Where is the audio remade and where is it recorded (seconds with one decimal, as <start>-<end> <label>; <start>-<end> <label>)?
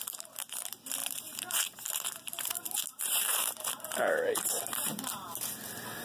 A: 0.0-1.0 recorded; 1.0-4.0 remade; 4.0-6.0 recorded